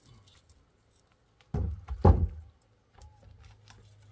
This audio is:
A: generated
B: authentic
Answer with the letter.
B